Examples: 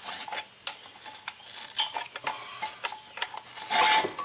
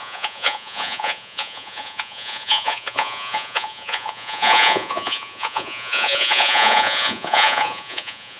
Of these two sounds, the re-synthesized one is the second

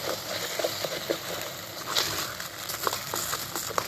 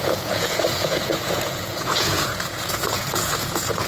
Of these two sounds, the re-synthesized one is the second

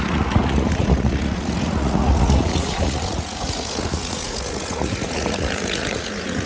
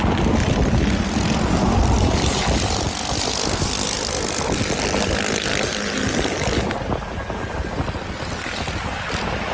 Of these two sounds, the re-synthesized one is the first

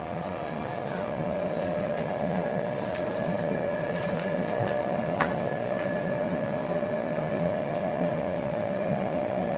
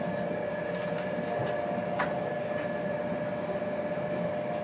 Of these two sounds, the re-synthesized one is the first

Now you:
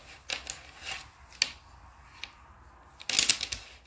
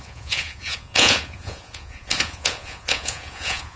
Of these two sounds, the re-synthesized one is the second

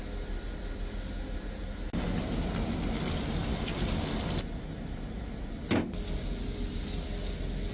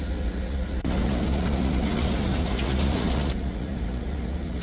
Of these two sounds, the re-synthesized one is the second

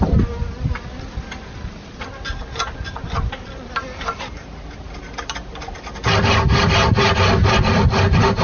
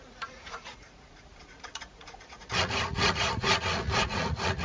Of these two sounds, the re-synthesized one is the second